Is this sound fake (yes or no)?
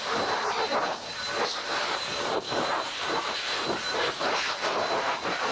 yes